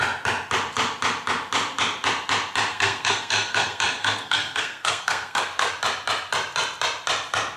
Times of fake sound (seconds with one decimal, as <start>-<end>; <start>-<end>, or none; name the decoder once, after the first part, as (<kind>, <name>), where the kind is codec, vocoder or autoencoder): 2.7-5.7 (codec, SNAC)